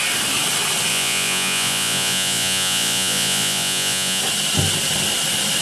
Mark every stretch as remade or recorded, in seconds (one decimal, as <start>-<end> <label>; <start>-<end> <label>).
0.0-0.9 recorded; 0.9-4.2 remade; 4.2-5.6 recorded